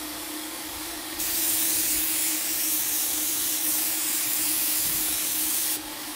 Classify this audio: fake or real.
fake